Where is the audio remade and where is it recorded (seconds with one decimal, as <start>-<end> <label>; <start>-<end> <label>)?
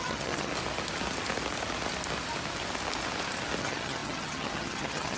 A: 0.0-0.5 remade; 0.5-3.6 recorded; 3.6-5.2 remade